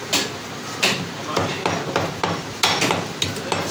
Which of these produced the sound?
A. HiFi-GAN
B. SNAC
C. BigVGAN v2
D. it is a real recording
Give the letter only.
D